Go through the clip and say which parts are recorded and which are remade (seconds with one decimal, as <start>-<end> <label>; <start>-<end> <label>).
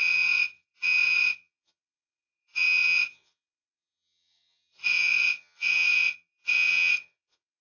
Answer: 0.0-7.6 remade